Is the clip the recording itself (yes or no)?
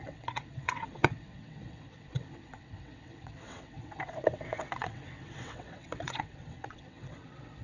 no